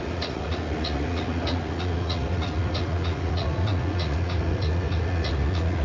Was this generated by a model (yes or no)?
yes